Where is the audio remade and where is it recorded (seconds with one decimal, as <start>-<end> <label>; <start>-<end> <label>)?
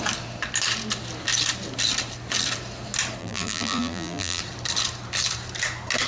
0.0-3.2 recorded; 3.2-4.4 remade; 4.4-6.1 recorded